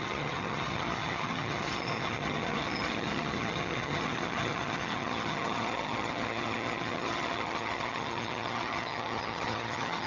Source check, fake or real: fake